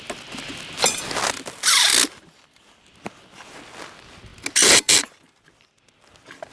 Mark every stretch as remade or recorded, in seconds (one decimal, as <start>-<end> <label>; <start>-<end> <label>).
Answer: 0.0-6.5 recorded